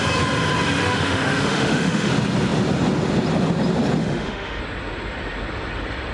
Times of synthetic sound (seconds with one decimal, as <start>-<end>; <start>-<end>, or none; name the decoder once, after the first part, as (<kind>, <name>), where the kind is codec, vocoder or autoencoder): 0.8-2.1 (autoencoder, DAC-VAE); 4.0-4.6